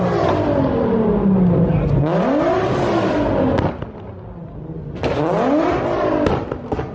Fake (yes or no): no